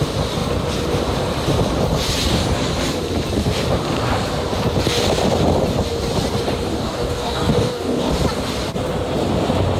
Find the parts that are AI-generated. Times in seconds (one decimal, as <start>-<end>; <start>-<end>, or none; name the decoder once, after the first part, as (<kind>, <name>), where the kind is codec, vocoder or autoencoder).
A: 6.7-8.1 (codec, DAC)